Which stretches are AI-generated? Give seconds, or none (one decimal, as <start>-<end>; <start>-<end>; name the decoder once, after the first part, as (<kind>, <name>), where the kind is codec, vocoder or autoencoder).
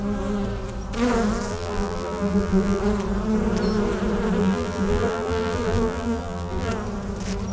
1.5-2.8 (vocoder, BigVGAN v2); 4.4-6.7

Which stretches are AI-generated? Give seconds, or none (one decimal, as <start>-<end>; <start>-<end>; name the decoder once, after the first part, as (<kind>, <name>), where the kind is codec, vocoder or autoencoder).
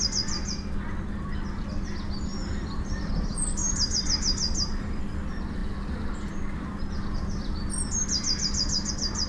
2.3-3.1 (vocoder, BigVGAN v2); 3.6-5.0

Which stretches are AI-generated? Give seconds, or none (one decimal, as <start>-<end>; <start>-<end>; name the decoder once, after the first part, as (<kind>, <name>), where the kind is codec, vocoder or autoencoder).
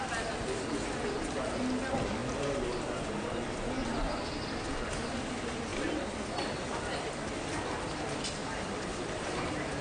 8.4-8.9 (vocoder, BigVGAN v2)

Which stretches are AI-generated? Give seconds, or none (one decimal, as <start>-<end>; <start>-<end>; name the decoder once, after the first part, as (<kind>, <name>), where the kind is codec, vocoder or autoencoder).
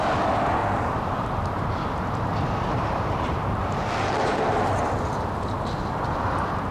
0.6-4.5 (vocoder, BigVGAN v2)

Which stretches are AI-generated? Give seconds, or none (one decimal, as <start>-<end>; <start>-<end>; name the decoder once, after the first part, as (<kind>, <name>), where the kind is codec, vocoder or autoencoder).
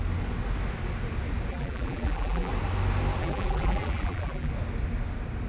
1.5-2.5 (vocoder, BigVGAN v2); 3.2-4.5